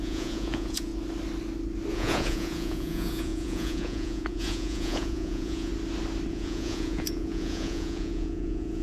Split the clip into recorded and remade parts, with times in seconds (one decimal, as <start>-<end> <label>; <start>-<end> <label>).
0.0-0.9 remade; 0.9-1.9 recorded; 1.9-5.7 remade; 5.7-6.3 recorded; 6.3-8.8 remade